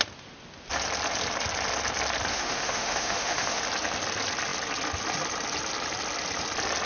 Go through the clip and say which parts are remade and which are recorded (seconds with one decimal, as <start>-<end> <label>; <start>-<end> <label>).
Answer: 0.0-2.3 recorded; 2.3-3.6 remade; 3.6-6.9 recorded